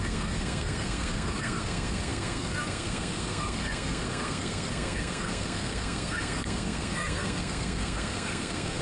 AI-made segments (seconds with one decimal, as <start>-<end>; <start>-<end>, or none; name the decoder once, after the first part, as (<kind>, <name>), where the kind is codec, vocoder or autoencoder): 0.0-8.8 (codec, SNAC)